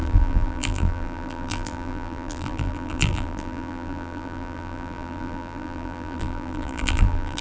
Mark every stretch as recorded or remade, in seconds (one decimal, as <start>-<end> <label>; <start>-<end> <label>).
0.0-7.4 remade